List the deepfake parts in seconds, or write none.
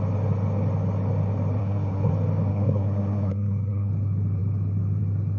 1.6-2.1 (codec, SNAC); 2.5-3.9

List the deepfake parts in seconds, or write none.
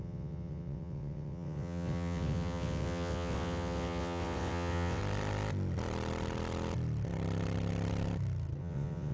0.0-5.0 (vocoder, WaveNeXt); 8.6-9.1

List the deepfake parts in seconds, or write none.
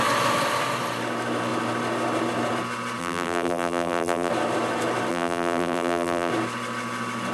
3.0-4.3 (vocoder, BigVGAN v2); 5.1-6.3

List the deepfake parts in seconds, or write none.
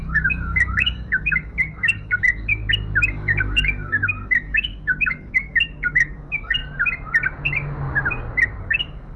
0.0-2.6 (codec, DAC); 3.1-6.6; 8.6-9.2